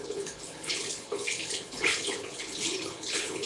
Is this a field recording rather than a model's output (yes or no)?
no